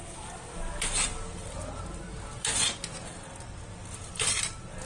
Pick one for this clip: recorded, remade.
recorded